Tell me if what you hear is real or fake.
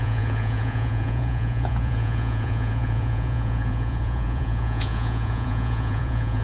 fake